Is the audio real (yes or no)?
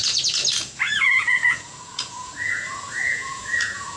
no